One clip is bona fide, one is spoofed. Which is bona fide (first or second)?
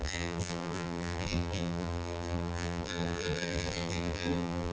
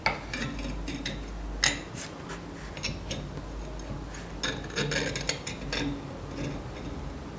second